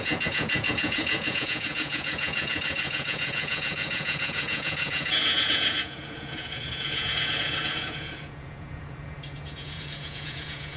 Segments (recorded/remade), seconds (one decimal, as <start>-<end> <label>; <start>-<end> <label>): 0.0-10.8 remade